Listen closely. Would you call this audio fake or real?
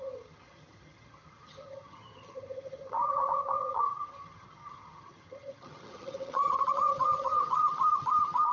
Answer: fake